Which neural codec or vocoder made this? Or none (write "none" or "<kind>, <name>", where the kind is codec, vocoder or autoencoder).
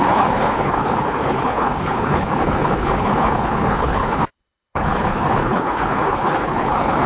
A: codec, HILCodec